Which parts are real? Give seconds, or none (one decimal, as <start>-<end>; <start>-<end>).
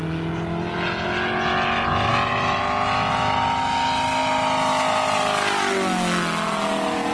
0.0-7.1